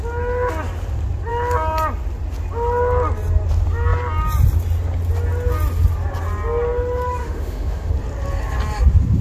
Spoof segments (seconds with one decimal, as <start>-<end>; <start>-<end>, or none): 7.2-7.9